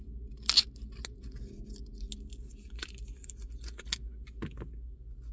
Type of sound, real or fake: real